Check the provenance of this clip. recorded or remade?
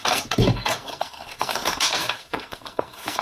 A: remade